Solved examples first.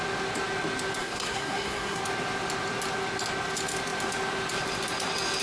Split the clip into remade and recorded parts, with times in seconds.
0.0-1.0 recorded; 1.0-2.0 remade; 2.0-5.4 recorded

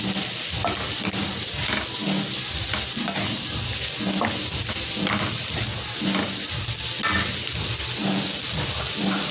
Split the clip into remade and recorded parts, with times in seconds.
0.0-9.3 recorded

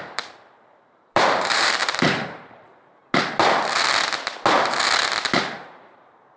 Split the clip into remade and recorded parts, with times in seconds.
0.0-3.0 remade; 3.0-6.0 recorded; 6.0-6.4 remade

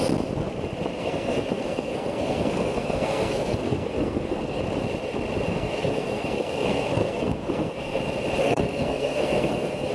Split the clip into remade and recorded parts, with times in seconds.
0.0-1.0 recorded; 1.0-4.6 remade; 4.6-5.5 recorded; 5.5-8.0 remade; 8.0-8.4 recorded; 8.4-9.9 remade